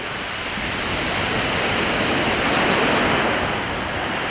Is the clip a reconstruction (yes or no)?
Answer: no